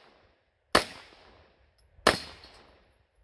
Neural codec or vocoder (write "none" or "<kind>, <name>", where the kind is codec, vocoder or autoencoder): none